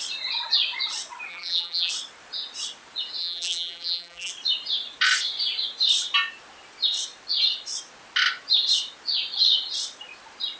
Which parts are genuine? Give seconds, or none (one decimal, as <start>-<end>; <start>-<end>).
0.0-1.3; 1.9-3.2; 4.3-10.6